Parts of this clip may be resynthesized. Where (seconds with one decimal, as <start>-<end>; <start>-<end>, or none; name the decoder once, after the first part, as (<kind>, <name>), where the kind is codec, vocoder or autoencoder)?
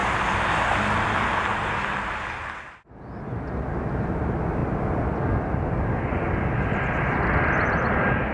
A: none